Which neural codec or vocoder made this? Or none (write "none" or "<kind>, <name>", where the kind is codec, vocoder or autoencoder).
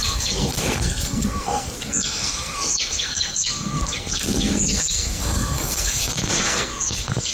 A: codec, SNAC